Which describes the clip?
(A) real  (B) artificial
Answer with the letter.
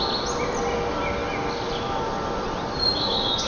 A